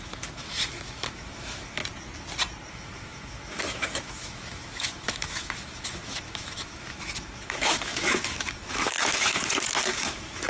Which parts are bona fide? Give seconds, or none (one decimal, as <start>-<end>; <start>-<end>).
1.8-2.7